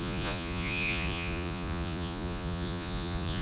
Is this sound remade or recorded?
remade